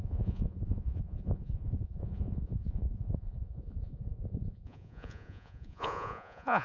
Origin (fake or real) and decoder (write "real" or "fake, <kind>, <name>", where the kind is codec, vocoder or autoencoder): fake, vocoder, Vocos